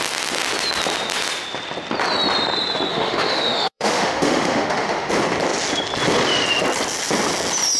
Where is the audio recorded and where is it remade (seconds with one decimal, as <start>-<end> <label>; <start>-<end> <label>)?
0.0-2.9 recorded; 2.9-5.1 remade; 5.1-7.8 recorded